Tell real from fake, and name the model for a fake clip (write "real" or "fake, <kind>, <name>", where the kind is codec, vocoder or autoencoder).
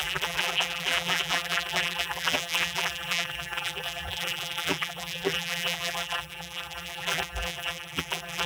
fake, vocoder, BigVGAN v2